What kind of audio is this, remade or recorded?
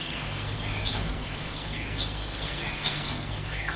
remade